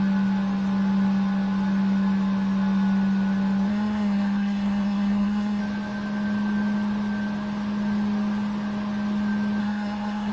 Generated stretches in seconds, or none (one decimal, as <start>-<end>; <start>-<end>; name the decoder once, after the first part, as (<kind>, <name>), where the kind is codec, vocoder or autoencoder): 3.7-5.6 (codec, SNAC); 9.6-10.3